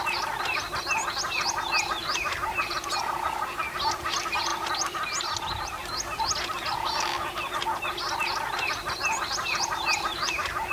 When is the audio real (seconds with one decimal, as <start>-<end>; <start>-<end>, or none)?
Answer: 0.0-2.0; 3.0-9.0